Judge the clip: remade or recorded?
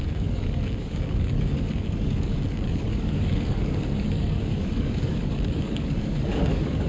remade